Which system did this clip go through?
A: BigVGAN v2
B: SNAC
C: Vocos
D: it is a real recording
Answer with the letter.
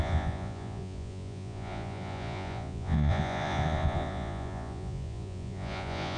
C